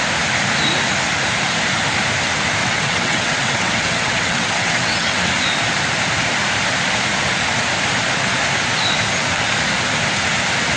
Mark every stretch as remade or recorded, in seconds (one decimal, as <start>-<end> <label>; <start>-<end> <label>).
0.0-2.6 recorded; 2.6-5.3 remade; 5.3-10.8 recorded